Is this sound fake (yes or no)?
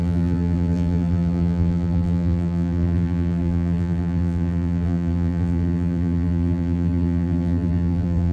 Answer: yes